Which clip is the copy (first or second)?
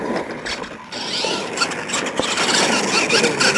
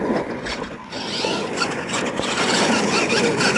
second